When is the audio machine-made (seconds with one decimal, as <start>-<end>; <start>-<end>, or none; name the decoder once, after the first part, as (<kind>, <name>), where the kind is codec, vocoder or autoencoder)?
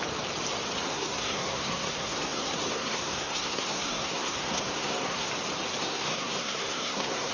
0.9-5.3 (codec, SNAC); 5.8-7.3